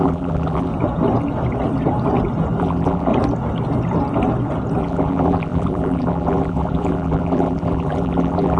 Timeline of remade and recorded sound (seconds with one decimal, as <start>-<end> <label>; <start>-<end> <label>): 0.0-0.7 remade; 0.7-2.6 recorded; 2.6-3.1 remade; 3.1-4.8 recorded; 4.8-8.6 remade